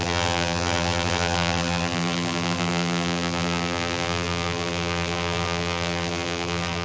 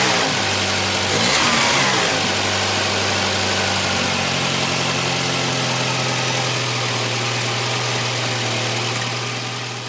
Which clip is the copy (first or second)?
first